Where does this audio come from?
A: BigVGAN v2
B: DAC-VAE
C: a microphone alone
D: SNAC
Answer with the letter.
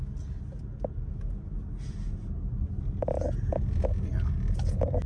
C